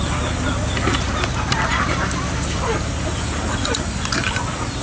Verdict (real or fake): real